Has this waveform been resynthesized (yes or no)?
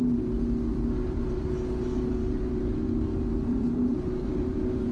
no